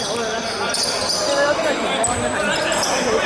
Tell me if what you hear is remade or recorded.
recorded